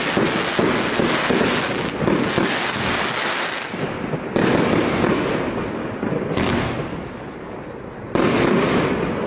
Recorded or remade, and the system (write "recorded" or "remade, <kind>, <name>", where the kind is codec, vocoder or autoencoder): recorded